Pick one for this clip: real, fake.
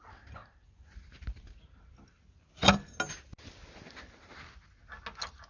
real